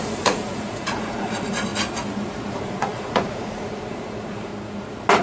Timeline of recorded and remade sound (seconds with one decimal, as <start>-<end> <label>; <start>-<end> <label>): 0.0-1.7 remade; 1.7-2.5 recorded; 2.5-4.5 remade; 4.5-5.2 recorded